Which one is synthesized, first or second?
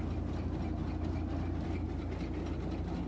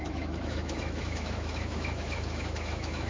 second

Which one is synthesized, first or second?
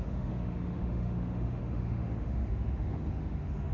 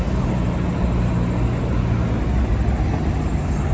first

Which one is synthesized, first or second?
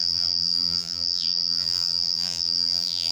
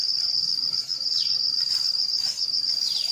first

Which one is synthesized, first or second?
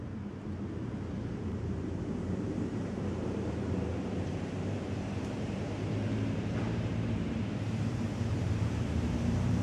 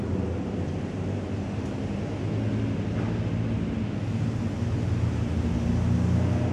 first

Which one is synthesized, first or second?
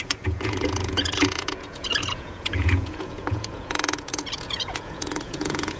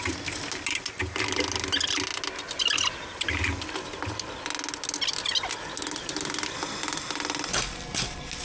first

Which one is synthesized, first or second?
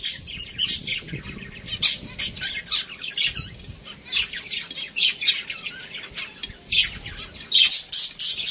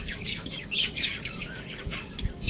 second